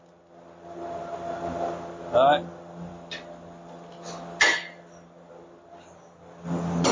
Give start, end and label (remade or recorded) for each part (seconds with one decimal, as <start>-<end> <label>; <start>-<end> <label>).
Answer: 0.0-6.9 recorded